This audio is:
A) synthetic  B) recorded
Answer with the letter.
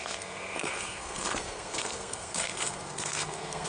A